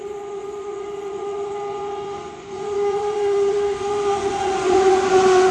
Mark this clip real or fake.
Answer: fake